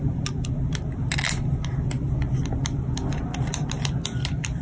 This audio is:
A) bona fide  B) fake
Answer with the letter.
A